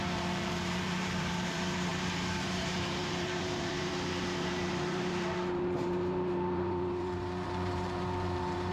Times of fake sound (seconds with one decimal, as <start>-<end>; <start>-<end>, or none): 0.0-8.7